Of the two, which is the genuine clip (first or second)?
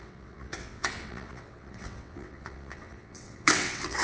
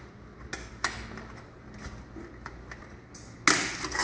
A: second